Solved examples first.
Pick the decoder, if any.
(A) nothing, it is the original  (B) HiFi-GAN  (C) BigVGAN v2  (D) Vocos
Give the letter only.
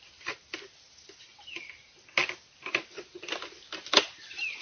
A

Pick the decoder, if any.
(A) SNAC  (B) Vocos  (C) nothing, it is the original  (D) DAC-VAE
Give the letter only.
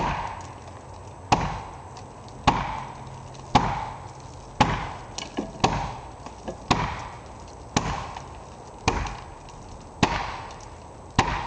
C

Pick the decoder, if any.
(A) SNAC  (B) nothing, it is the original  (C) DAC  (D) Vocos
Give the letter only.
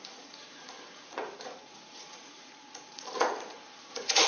D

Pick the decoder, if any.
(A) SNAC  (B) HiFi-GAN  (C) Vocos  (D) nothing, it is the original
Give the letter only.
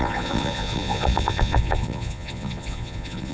C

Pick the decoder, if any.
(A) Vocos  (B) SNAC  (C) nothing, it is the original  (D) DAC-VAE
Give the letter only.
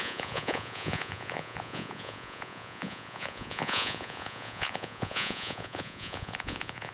A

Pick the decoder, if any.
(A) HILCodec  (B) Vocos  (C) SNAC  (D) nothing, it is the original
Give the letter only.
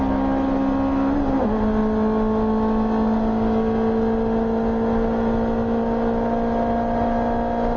D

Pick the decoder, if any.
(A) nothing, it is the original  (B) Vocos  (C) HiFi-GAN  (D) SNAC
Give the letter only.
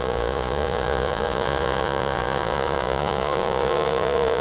B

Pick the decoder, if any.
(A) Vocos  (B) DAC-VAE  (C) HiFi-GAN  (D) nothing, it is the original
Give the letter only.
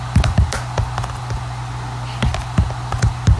D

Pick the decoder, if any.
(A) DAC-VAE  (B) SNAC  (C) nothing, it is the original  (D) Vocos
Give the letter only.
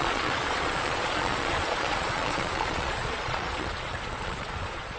D